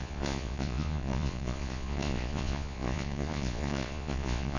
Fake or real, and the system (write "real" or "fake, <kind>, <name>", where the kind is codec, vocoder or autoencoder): fake, vocoder, Vocos